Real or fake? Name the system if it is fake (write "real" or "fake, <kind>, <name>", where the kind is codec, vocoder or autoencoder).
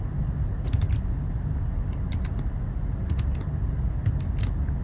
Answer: real